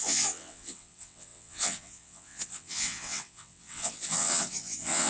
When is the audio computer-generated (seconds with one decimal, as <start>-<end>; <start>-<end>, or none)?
0.0-5.1